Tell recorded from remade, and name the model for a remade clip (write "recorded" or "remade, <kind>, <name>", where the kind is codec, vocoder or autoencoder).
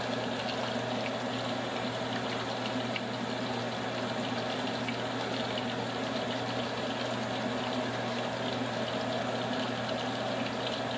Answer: recorded